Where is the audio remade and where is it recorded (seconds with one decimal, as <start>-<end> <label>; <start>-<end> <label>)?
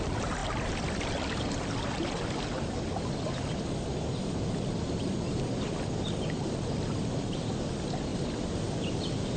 0.0-9.4 recorded